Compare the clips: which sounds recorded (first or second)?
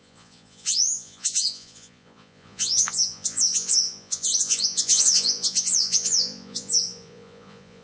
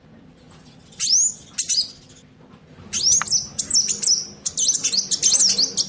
second